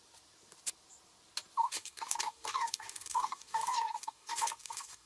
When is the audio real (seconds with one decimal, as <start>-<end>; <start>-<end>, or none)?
0.0-1.6